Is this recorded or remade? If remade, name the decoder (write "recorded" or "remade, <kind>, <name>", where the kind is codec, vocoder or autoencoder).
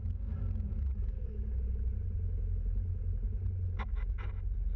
recorded